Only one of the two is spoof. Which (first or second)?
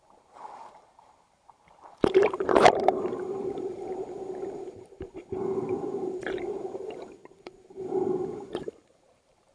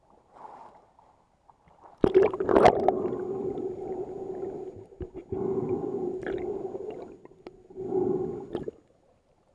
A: first